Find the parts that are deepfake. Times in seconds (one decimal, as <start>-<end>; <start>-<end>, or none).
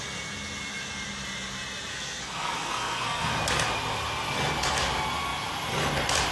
1.9-3.3